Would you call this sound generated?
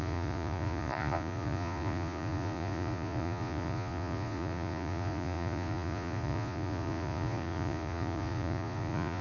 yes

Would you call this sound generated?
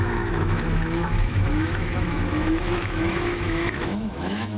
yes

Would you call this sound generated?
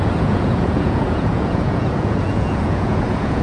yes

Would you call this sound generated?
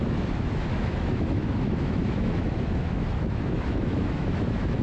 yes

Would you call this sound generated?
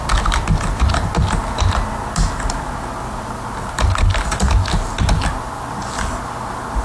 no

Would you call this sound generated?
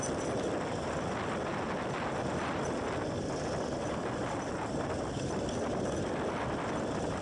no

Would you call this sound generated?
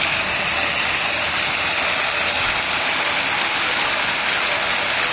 no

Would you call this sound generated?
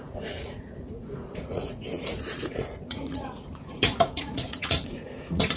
yes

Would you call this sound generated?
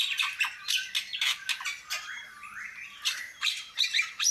no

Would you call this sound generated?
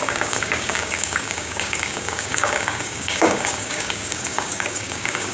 yes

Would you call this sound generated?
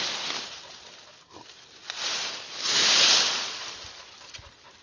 no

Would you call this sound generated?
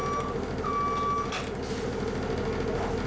no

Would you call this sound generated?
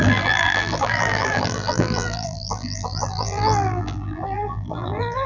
yes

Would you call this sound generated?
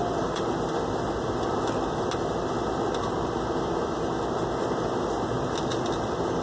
no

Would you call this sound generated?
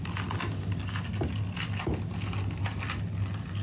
no